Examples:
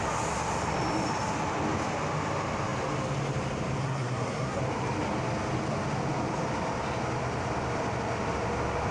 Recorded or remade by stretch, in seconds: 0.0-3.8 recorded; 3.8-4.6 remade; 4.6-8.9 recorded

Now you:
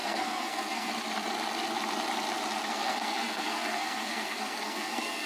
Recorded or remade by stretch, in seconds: 0.0-0.9 remade; 0.9-2.7 recorded; 2.7-5.3 remade

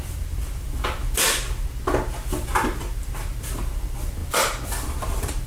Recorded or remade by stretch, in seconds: 0.0-1.0 remade; 1.0-2.3 recorded; 2.3-5.5 remade

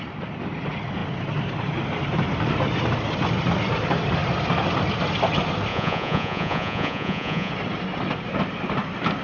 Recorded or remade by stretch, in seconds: 0.0-5.7 recorded; 5.7-7.5 remade; 7.5-9.2 recorded

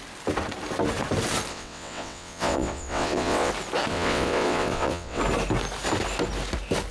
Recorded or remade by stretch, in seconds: 0.0-1.5 recorded; 1.5-3.5 remade; 3.5-3.9 recorded; 3.9-5.2 remade; 5.2-6.9 recorded